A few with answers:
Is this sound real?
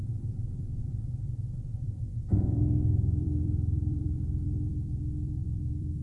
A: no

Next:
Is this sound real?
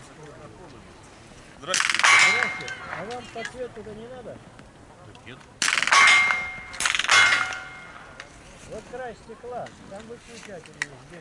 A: yes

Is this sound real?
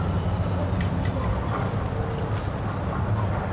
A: yes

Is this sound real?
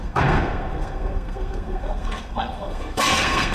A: no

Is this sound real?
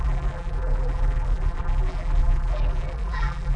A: no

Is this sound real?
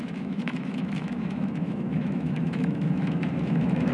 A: no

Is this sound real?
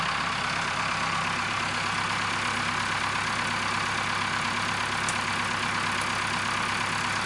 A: yes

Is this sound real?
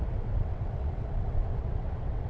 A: no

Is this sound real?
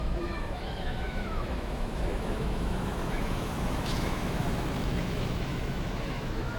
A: no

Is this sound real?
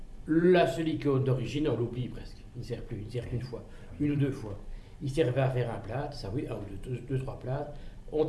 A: no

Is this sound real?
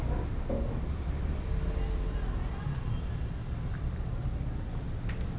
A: yes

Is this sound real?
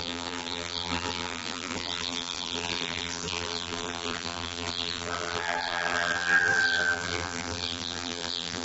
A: no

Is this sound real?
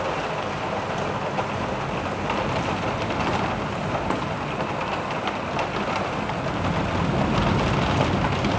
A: yes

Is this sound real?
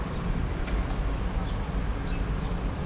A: yes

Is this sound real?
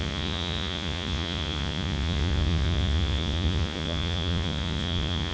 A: no